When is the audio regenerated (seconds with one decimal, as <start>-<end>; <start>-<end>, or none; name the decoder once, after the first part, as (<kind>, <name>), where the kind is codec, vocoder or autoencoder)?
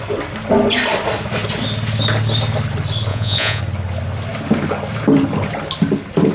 3.1-3.6 (vocoder, Vocos)